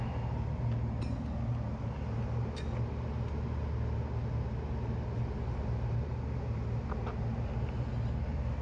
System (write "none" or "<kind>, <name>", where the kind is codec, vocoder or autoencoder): none